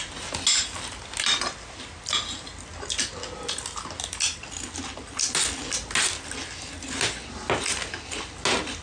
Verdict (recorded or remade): recorded